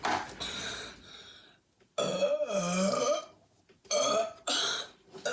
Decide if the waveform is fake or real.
real